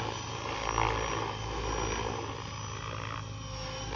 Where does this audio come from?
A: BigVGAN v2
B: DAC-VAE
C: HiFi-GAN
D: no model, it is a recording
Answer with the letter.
D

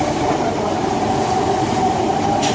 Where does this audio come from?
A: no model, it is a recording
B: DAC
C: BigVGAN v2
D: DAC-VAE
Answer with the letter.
C